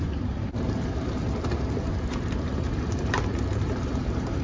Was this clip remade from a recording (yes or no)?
yes